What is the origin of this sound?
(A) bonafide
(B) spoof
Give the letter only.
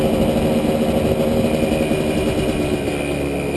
A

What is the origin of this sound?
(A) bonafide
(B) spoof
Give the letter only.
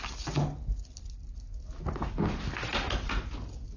A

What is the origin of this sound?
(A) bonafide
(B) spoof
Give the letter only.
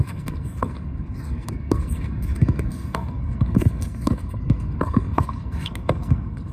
B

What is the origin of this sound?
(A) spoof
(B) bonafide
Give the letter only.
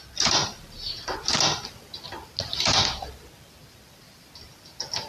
B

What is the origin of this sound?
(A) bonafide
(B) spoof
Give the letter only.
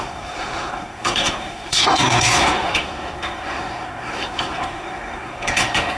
B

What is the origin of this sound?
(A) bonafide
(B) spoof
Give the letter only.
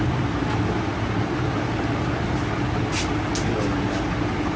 A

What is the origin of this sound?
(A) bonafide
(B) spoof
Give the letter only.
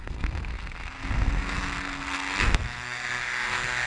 B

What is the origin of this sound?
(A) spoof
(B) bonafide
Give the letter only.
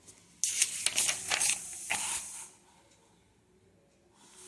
B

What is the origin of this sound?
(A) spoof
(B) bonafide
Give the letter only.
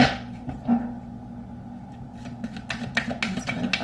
B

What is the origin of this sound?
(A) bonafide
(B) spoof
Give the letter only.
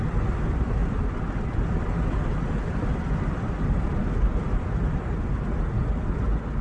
A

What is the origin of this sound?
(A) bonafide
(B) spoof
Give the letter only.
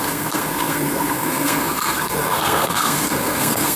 B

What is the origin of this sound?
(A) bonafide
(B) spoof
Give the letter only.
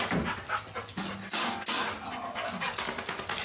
A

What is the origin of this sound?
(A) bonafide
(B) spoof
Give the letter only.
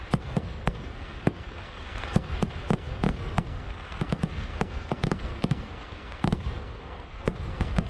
B